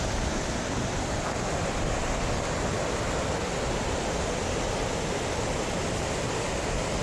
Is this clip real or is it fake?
real